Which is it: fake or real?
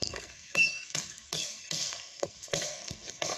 fake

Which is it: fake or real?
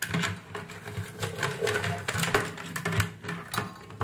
real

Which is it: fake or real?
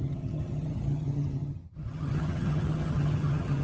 fake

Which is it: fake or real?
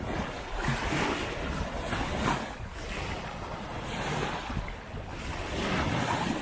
real